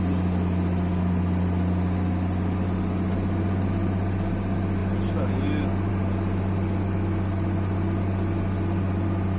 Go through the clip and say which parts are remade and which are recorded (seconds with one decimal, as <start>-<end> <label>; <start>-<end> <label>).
0.0-9.4 recorded